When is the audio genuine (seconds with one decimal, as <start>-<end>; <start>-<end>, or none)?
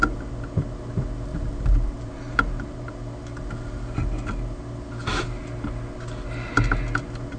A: 0.0-1.3; 2.9-7.4